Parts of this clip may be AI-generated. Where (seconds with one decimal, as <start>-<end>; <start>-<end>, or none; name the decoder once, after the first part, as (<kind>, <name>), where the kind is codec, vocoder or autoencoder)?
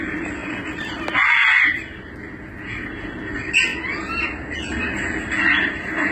none